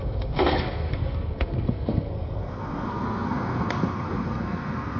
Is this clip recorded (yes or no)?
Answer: no